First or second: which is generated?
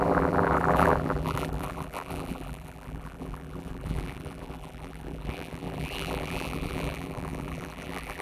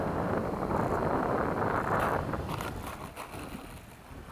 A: first